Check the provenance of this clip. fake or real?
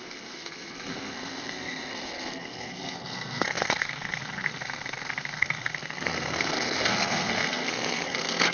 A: fake